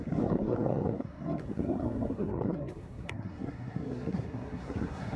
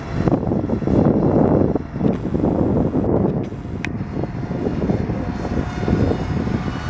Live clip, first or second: second